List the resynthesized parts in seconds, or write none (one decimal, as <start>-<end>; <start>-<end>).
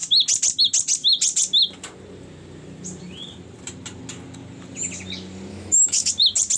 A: 5.5-6.1